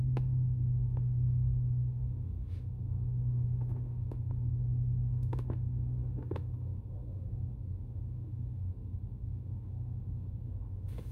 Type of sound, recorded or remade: remade